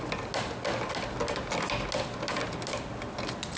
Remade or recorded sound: recorded